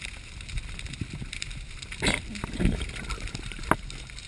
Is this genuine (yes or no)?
yes